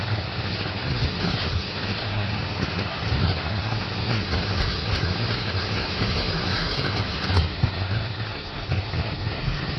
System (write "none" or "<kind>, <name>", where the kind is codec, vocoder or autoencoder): codec, SNAC